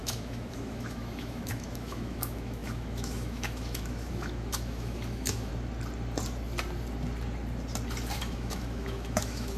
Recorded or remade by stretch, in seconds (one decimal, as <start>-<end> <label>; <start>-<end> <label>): 0.0-5.5 remade; 5.5-8.2 recorded; 8.2-9.6 remade